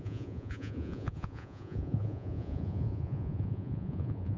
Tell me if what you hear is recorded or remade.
remade